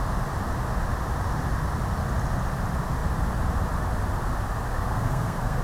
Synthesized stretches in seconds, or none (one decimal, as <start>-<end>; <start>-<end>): 4.7-5.6